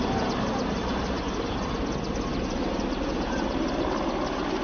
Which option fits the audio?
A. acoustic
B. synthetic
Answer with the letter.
A